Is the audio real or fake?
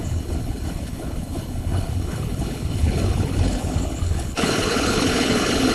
fake